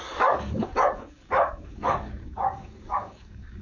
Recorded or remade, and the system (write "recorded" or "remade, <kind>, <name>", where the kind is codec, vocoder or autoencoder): remade, codec, DAC